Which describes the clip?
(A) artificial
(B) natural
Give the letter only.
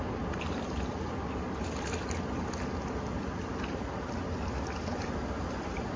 B